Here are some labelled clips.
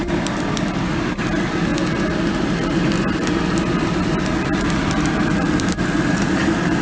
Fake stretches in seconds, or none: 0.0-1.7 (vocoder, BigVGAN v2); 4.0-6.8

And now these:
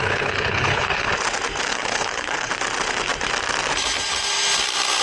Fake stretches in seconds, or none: 0.0-1.1 (codec, HILCodec); 1.7-2.5

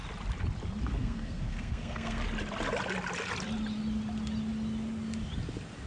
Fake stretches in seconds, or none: 1.0-2.2 (codec, SNAC)

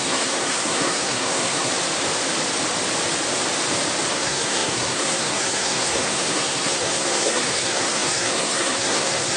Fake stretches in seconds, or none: 0.0-1.7 (codec, SNAC); 4.1-9.4

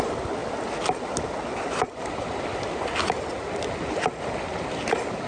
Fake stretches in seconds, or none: none

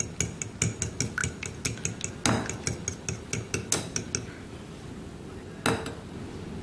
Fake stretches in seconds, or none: none

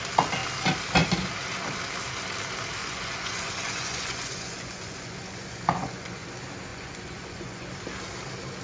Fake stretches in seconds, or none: 2.8-6.3 (vocoder, Vocos); 6.7-7.7